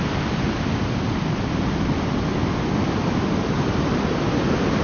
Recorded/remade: recorded